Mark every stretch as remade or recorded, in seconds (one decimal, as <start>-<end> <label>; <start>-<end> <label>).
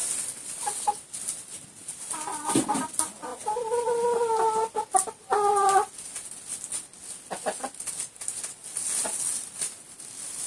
0.0-3.3 recorded; 3.3-4.7 remade; 4.7-10.5 recorded